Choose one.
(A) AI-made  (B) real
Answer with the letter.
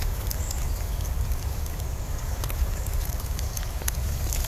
A